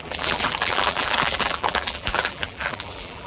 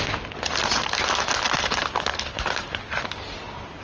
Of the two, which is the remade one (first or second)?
first